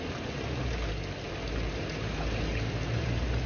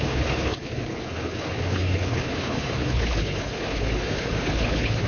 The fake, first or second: second